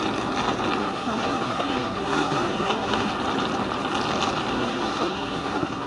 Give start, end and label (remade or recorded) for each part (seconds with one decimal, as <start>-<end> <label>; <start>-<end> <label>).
0.0-0.8 recorded; 0.8-3.1 remade; 3.1-4.5 recorded; 4.5-5.9 remade